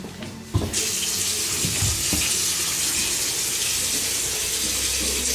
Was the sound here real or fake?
real